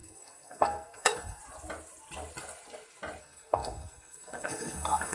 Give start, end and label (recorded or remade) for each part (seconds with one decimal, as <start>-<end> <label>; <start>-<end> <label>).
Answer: 0.0-1.4 remade; 1.4-3.2 recorded; 3.2-5.1 remade